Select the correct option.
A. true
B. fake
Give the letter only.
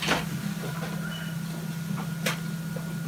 A